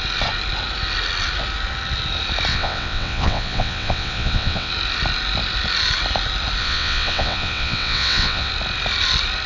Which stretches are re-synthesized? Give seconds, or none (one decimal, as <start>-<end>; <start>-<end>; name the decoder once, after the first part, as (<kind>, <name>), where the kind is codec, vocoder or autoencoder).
2.5-4.7 (vocoder, WaveNeXt); 6.6-8.5